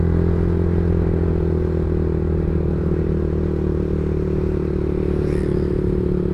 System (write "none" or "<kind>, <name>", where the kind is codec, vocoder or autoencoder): none